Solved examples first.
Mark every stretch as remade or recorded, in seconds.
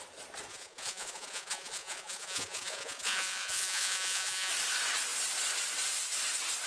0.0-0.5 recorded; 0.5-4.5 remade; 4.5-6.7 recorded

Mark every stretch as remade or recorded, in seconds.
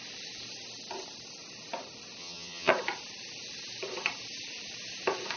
0.0-2.2 recorded; 2.2-2.7 remade; 2.7-5.4 recorded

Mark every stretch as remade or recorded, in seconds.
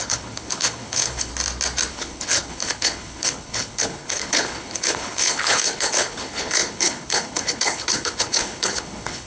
0.0-1.3 remade; 1.3-1.9 recorded; 1.9-9.3 remade